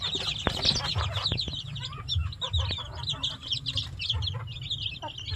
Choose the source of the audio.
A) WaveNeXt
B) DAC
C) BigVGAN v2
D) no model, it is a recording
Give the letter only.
D